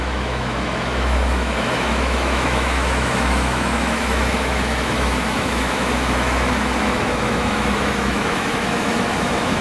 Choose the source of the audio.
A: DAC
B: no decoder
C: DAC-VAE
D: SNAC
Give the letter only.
C